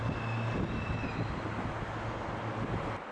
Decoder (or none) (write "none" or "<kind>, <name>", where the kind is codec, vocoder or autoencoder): none